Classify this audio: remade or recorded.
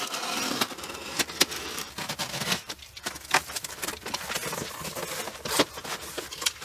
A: remade